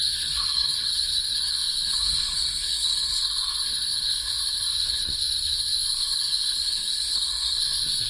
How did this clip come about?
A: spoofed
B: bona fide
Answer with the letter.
A